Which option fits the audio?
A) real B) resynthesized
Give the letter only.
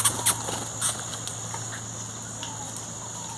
A